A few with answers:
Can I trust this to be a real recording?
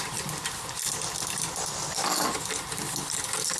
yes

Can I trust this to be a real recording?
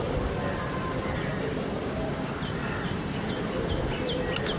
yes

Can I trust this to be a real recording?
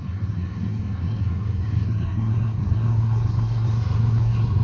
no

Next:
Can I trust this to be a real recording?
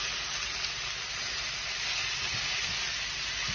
yes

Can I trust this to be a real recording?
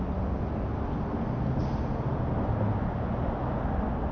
yes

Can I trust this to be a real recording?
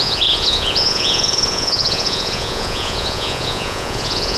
no